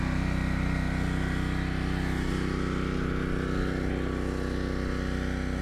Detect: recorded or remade recorded